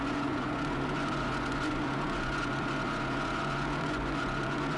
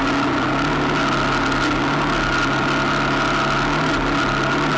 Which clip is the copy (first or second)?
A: first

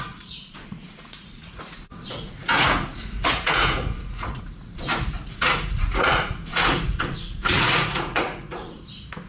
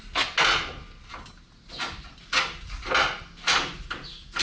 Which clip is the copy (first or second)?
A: first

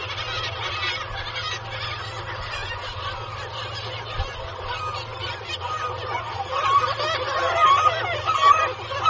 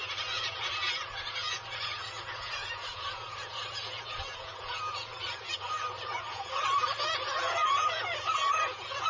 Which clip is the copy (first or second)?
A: second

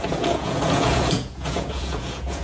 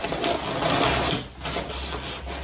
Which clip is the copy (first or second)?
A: first